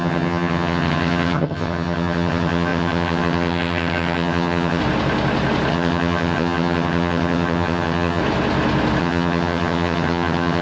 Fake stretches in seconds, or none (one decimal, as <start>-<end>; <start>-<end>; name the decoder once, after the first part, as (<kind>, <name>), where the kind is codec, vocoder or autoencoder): 0.0-4.8 (vocoder, HiFi-GAN); 5.7-8.2; 9.0-10.6